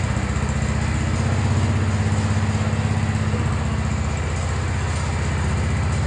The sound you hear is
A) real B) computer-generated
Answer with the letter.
A